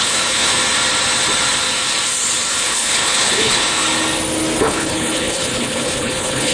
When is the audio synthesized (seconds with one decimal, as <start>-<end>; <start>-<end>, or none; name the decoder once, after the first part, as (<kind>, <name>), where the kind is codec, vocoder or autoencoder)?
0.0-0.5 (codec, HILCodec); 2.5-3.8; 4.6-6.5